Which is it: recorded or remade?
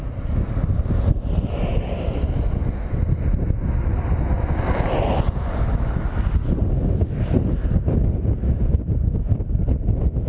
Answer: recorded